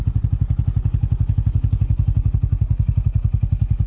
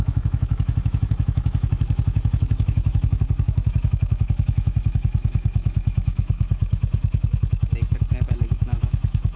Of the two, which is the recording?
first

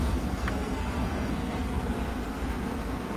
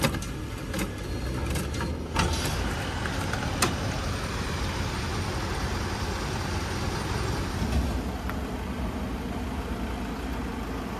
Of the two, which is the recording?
second